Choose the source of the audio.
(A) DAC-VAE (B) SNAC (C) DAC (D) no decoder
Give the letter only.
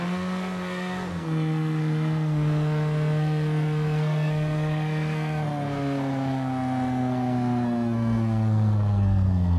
B